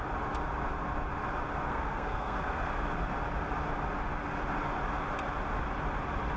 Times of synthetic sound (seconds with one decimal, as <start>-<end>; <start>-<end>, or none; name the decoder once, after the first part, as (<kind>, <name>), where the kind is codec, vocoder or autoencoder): 1.7-2.7 (codec, SNAC)

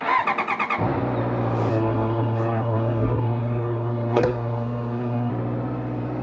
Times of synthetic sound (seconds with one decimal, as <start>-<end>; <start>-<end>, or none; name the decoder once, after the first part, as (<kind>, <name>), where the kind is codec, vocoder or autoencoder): 1.7-5.3 (codec, SNAC)

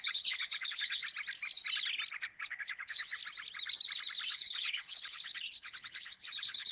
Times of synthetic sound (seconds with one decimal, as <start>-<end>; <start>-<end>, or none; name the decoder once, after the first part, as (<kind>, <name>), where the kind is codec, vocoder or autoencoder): 0.0-1.0 (codec, HILCodec); 2.1-3.1; 4.3-6.7

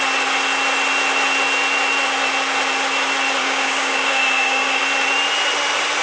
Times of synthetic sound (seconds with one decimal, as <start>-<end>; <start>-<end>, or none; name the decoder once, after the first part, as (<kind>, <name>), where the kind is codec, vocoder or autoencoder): 3.4-4.8 (codec, DAC)

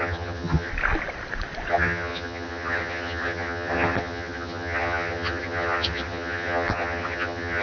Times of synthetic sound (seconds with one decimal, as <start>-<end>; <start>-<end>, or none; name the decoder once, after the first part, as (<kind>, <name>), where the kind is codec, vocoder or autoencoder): 0.0-0.7 (vocoder, HiFi-GAN); 1.7-7.6

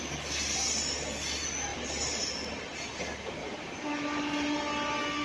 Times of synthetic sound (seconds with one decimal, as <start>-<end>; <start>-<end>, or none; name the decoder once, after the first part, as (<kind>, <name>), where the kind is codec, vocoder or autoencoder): 1.7-2.2 (vocoder, BigVGAN v2); 3.4-4.6

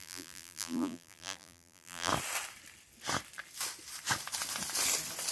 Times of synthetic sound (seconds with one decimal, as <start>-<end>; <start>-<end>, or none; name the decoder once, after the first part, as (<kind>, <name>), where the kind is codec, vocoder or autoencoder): 0.0-2.1 (vocoder, BigVGAN v2)